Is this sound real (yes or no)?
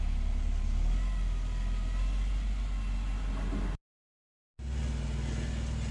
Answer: yes